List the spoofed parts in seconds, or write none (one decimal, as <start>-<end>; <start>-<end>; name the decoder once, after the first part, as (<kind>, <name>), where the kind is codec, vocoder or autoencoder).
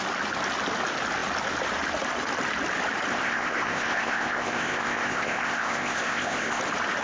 3.1-6.6 (codec, ZipCodec)